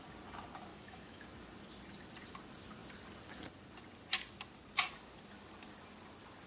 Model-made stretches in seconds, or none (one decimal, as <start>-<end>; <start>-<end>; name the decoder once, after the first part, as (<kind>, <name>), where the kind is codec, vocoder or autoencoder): 0.7-1.2 (autoencoder, DAC-VAE)

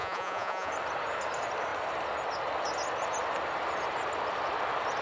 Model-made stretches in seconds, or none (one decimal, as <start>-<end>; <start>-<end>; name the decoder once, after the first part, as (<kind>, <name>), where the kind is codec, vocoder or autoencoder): 0.0-0.7 (vocoder, Vocos)

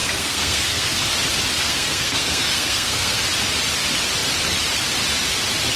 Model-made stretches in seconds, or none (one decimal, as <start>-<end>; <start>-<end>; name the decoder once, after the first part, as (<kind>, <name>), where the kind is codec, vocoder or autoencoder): 0.0-1.0 (codec, SNAC); 1.6-3.2

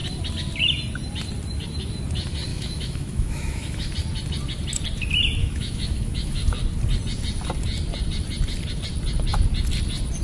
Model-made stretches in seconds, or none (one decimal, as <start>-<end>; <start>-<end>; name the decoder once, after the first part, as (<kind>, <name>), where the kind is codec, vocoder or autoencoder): 2.5-3.9 (autoencoder, DAC-VAE); 5.4-6.4

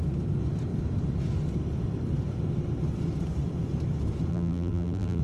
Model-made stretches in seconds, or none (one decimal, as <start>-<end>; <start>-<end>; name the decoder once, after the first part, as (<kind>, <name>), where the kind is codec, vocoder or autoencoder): 4.3-5.2 (vocoder, BigVGAN v2)

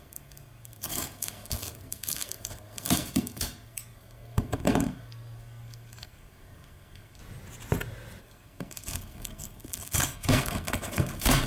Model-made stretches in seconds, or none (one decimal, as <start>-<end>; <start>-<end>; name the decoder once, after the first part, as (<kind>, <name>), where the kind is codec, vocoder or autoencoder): 0.0-7.2 (codec, SNAC); 8.2-11.5

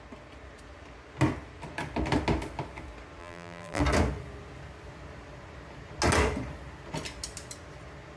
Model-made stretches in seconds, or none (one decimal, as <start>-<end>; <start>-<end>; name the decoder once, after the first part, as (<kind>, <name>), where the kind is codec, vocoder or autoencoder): 3.2-3.8 (vocoder, BigVGAN v2)